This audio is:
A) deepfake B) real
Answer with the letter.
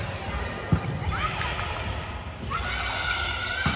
B